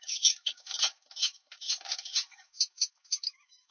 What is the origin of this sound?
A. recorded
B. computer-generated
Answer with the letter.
B